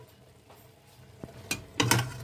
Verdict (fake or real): real